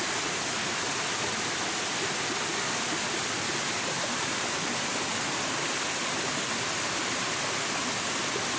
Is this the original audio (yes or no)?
yes